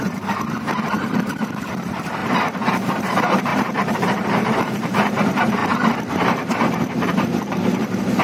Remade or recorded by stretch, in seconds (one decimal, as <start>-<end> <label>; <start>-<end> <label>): 0.0-2.2 remade; 2.2-2.9 recorded; 2.9-5.6 remade; 5.6-6.1 recorded; 6.1-8.2 remade